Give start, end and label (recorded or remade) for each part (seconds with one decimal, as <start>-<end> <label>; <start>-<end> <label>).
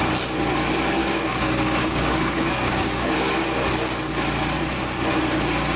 0.0-1.0 recorded; 1.0-3.1 remade; 3.1-5.8 recorded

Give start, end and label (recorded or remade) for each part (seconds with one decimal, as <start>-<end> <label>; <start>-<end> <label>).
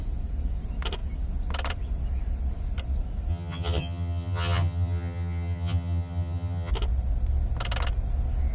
0.0-3.3 recorded; 3.3-6.7 remade; 6.7-8.5 recorded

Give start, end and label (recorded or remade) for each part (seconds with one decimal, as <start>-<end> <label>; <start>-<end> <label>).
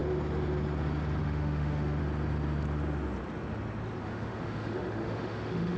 0.0-1.2 recorded; 1.2-2.0 remade; 2.0-4.0 recorded; 4.0-5.8 remade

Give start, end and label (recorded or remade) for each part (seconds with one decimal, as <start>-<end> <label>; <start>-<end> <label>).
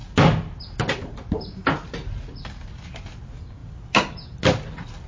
0.0-5.1 recorded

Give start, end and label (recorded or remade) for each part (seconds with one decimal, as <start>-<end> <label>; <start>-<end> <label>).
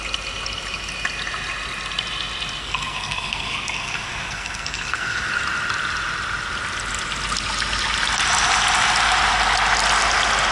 0.0-2.6 recorded; 2.6-5.3 remade; 5.3-10.5 recorded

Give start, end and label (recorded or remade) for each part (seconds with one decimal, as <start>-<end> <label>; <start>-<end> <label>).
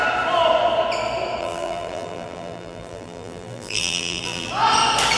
0.0-1.4 recorded; 1.4-4.5 remade; 4.5-5.2 recorded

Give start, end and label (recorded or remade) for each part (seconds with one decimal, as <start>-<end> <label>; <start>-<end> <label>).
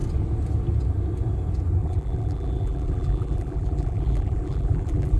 0.0-1.8 recorded; 1.8-5.2 remade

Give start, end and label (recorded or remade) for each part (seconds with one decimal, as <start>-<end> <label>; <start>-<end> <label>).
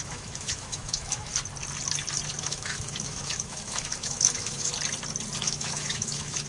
0.0-1.3 remade; 1.3-2.4 recorded; 2.4-4.7 remade; 4.7-5.4 recorded; 5.4-6.5 remade